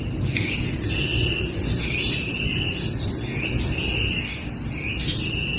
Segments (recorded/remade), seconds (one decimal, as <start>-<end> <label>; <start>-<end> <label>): 0.0-5.6 recorded